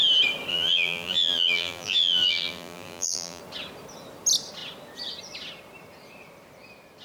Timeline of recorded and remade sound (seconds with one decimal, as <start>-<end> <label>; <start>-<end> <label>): 0.0-0.5 recorded; 0.5-3.4 remade; 3.4-7.0 recorded